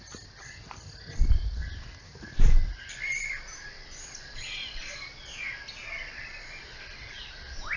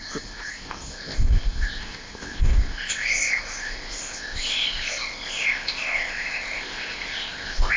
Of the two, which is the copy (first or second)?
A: second